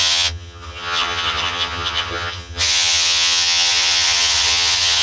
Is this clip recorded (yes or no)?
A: no